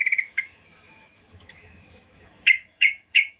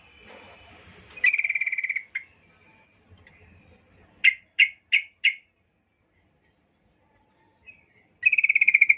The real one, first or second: second